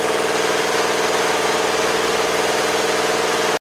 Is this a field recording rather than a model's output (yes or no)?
yes